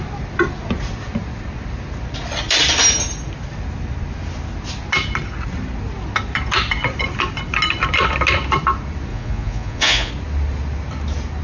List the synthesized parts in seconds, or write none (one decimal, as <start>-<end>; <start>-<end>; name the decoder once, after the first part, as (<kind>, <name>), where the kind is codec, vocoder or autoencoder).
9.1-10.1 (vocoder, Vocos)